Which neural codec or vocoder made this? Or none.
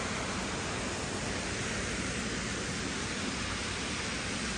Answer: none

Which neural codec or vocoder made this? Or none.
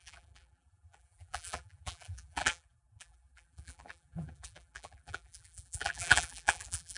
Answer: vocoder, BigVGAN v2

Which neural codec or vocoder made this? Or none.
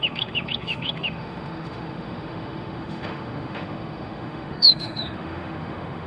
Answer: autoencoder, DAC-VAE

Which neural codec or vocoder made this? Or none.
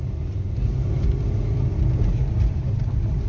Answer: none